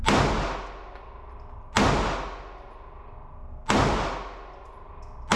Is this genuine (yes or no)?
yes